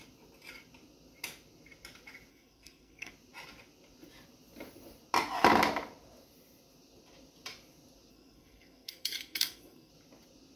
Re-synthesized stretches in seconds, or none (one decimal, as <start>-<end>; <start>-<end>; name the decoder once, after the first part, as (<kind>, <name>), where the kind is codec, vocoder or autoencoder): 2.3-3.1 (codec, SNAC); 8.1-9.9